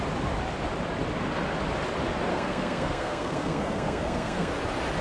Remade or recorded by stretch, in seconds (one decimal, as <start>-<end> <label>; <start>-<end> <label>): 0.0-2.3 recorded; 2.3-4.5 remade; 4.5-5.0 recorded